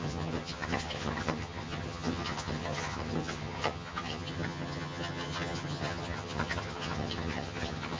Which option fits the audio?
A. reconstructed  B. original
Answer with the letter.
A